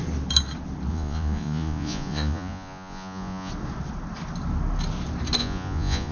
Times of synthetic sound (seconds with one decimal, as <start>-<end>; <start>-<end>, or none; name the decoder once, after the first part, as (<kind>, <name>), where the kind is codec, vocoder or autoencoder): 0.9-3.5 (vocoder, Vocos); 5.4-6.1